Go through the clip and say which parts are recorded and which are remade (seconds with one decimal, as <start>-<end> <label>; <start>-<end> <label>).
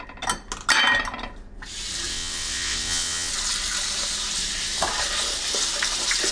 0.0-2.1 recorded; 2.1-3.3 remade; 3.3-6.3 recorded